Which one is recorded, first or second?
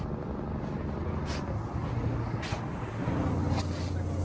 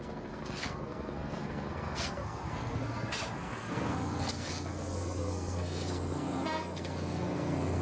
first